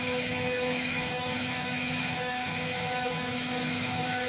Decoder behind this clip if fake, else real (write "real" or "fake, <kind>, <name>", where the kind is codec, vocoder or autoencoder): fake, autoencoder, DAC-VAE